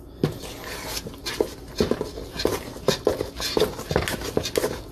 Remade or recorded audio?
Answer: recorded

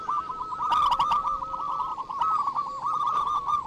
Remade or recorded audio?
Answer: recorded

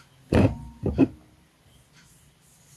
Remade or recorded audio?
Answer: recorded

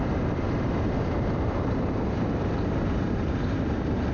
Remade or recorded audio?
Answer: remade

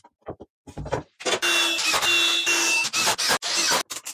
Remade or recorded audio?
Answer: recorded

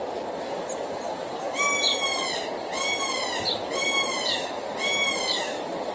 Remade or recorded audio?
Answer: remade